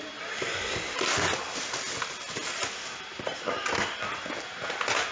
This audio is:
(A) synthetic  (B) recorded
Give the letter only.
B